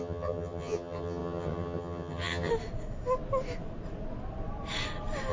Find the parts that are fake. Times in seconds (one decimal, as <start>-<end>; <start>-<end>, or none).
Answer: 0.0-2.5